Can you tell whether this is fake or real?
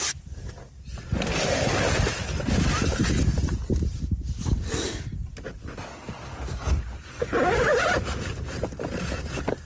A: real